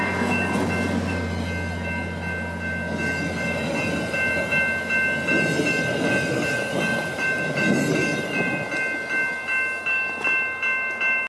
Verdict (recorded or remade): recorded